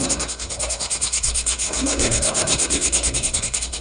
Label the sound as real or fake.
fake